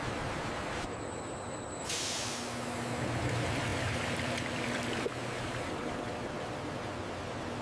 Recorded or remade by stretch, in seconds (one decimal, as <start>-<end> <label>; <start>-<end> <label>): 0.0-3.7 recorded; 3.7-5.1 remade; 5.1-7.6 recorded